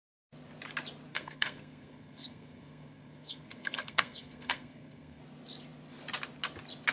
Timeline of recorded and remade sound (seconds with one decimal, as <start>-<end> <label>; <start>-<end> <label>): 0.0-1.1 recorded; 1.1-5.2 remade; 5.2-6.9 recorded